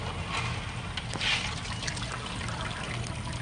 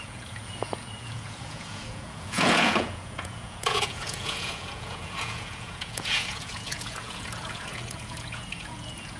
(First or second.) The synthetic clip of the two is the second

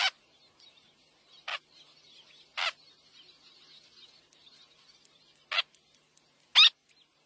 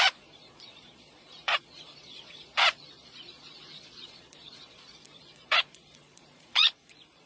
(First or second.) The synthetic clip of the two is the second